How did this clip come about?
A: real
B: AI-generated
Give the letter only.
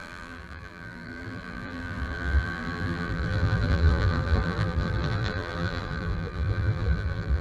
B